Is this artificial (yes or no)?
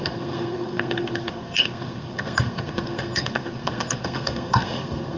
yes